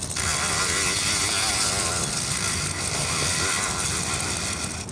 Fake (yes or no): no